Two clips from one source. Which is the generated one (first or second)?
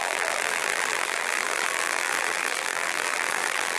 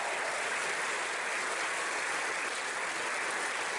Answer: first